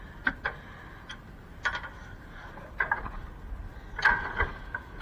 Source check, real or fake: real